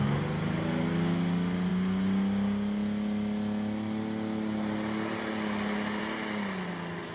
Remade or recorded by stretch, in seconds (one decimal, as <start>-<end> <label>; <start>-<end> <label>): 0.0-7.1 recorded